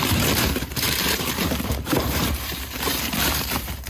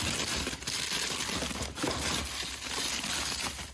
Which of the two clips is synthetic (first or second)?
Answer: first